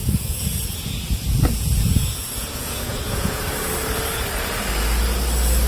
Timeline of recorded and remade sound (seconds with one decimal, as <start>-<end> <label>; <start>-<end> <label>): 0.0-3.4 remade; 3.4-5.7 recorded